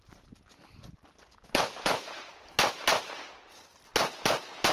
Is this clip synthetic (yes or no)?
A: no